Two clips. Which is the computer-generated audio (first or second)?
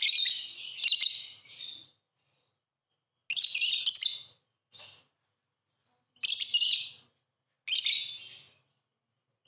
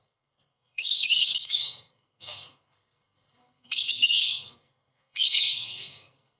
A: second